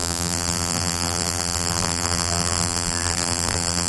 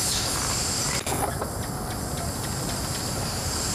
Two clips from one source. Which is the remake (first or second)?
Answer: first